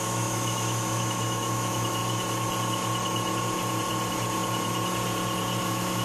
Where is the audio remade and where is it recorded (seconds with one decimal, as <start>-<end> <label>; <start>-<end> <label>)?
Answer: 0.0-2.0 remade; 2.0-5.6 recorded; 5.6-6.0 remade